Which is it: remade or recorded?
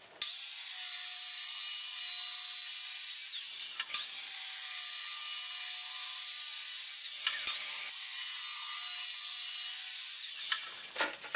recorded